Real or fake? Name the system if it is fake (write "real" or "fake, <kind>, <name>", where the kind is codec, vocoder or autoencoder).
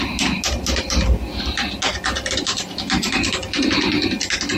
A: real